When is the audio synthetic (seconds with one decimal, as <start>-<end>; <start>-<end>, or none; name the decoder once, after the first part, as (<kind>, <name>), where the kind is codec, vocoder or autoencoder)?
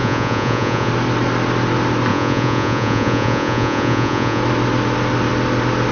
0.0-0.9 (vocoder, Vocos); 2.1-4.4